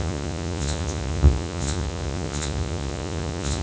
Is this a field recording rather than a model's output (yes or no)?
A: no